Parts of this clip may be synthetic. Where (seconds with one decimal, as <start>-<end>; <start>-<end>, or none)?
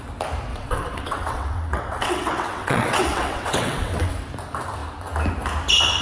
0.5-4.1